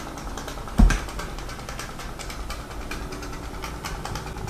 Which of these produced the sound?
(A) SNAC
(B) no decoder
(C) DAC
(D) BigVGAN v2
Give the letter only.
B